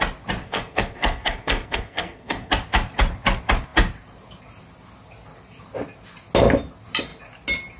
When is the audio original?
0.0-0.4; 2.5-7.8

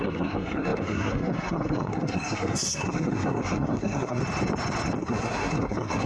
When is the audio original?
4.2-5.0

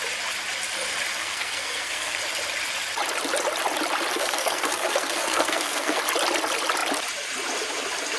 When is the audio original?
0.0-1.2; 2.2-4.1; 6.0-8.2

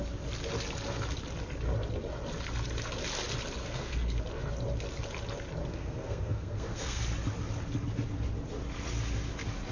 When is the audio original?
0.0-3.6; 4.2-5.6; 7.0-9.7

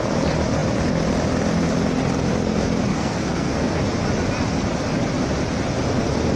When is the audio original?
0.0-2.9; 3.8-6.4

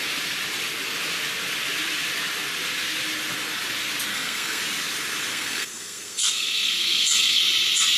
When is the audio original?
0.0-4.1; 4.6-5.3; 7.4-8.0